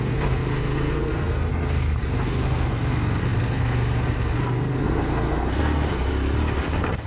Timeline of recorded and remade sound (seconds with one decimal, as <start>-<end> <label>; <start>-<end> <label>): 0.0-1.5 remade; 1.5-2.0 recorded; 2.0-6.1 remade; 6.1-6.6 recorded; 6.6-7.1 remade